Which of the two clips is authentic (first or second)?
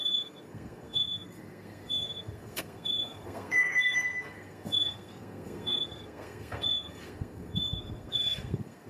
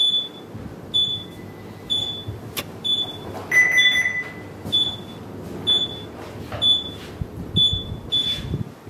second